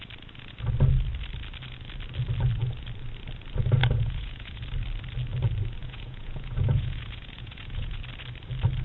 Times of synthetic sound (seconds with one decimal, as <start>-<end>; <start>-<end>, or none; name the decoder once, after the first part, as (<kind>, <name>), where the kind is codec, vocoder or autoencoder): 3.8-4.6 (vocoder, Vocos); 5.8-8.0

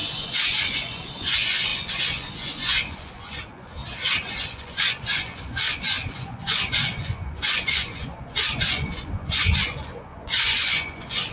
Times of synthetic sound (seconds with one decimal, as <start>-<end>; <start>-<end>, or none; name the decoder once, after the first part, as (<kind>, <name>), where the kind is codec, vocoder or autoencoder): 0.0-3.8 (vocoder, Vocos); 4.4-11.3

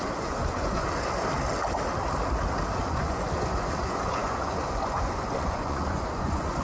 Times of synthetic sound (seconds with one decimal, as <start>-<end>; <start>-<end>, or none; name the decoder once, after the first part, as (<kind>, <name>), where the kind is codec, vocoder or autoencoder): 0.0-0.8 (vocoder, Vocos); 2.8-6.6

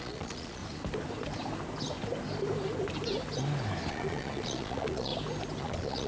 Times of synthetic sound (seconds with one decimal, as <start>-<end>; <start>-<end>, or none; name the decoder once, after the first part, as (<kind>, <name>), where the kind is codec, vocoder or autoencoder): 0.0-0.6 (vocoder, Vocos); 3.9-5.1; 5.6-6.1

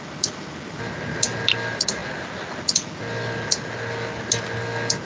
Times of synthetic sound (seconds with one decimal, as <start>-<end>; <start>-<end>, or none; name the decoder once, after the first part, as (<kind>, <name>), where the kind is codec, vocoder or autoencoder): none